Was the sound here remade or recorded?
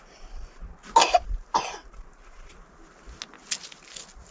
recorded